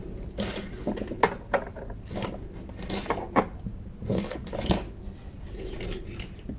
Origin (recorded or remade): recorded